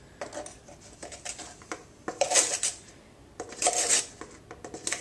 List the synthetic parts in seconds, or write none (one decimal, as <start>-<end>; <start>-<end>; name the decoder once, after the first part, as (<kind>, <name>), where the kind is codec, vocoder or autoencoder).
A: 1.0-4.0 (vocoder, BigVGAN v2)